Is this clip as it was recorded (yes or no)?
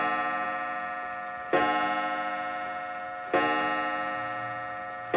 yes